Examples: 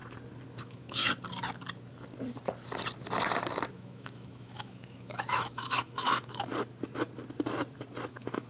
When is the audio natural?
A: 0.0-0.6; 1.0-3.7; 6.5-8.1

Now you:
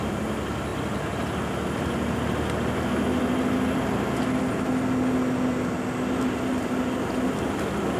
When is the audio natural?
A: 0.0-8.0

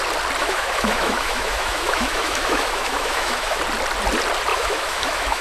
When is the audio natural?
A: 0.0-0.4; 3.6-4.5

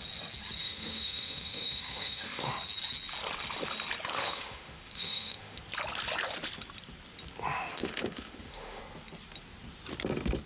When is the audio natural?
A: 0.0-0.6; 2.5-4.1; 5.6-7.7; 8.8-10.5

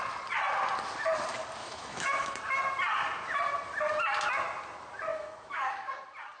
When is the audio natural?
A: 0.0-1.6; 2.4-5.1; 5.9-6.4

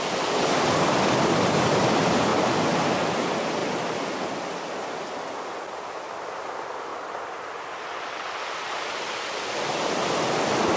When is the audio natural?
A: 0.0-10.8

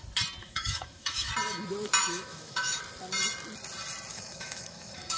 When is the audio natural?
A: 0.0-0.4; 1.3-2.0; 2.8-4.1

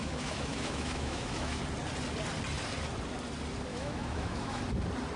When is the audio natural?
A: 1.6-3.7; 4.6-5.2